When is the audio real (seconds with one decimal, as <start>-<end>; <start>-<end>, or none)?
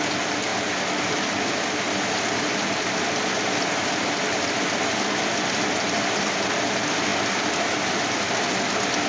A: 0.0-9.1